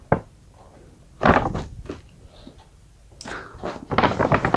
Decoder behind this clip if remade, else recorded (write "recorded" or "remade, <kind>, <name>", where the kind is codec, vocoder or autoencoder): recorded